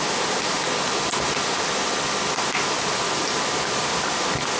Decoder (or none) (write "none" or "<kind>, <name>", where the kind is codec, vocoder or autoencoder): none